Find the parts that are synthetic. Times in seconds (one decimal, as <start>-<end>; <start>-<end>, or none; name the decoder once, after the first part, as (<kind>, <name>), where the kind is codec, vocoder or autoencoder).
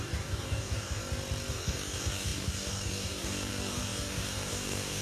0.0-1.0 (codec, DAC); 1.5-5.0